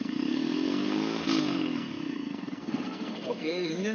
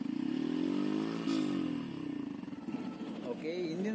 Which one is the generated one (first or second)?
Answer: first